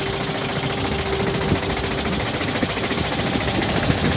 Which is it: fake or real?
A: real